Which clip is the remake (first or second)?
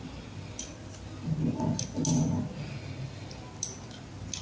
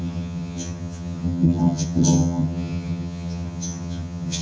second